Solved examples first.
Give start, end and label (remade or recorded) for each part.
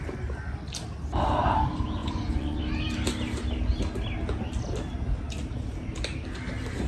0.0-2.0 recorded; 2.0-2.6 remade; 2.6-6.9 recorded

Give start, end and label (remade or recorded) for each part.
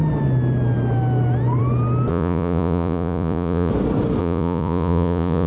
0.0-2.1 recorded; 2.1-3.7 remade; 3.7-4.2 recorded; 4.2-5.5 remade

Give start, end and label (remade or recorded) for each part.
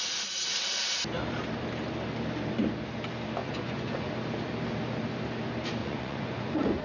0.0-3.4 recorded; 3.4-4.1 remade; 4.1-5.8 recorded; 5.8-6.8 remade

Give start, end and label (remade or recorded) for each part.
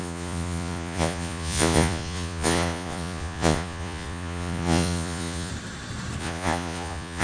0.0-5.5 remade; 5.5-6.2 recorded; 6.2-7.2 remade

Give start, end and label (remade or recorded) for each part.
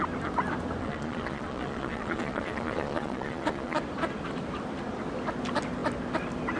0.0-0.8 recorded; 0.8-3.8 remade; 3.8-6.6 recorded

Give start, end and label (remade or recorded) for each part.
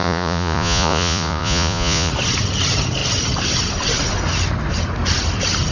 0.0-2.1 remade; 2.1-5.7 recorded